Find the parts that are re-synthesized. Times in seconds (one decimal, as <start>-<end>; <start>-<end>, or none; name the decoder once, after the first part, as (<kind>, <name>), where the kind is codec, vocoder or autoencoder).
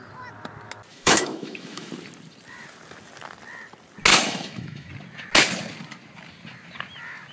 0.9-1.9 (autoencoder, DAC-VAE); 4.1-4.9